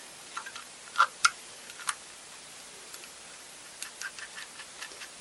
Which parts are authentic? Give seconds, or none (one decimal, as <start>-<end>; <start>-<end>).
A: 0.0-5.2